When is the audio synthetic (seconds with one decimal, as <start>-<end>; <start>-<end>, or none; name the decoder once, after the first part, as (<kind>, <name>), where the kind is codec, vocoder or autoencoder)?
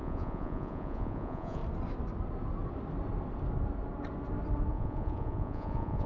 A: 0.0-1.6 (vocoder, Vocos); 4.7-6.1